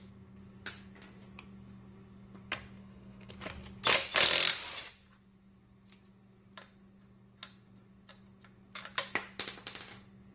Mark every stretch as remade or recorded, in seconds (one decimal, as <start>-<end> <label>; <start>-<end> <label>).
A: 0.0-2.8 recorded; 2.8-3.3 remade; 3.3-10.3 recorded